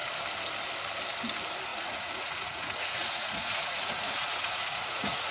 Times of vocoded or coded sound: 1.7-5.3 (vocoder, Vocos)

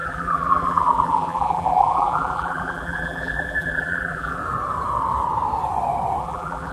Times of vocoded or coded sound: 0.0-4.4 (vocoder, BigVGAN v2); 6.2-6.7